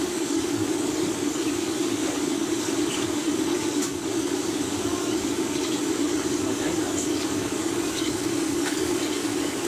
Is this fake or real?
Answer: fake